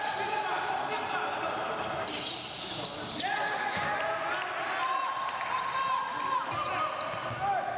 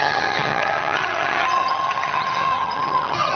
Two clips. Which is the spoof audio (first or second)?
second